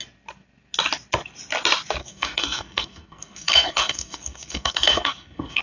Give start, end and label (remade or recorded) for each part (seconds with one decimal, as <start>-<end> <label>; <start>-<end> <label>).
0.0-2.0 recorded; 2.0-5.6 remade